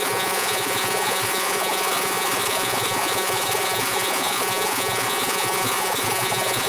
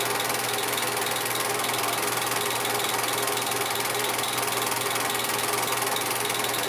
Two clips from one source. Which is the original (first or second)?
second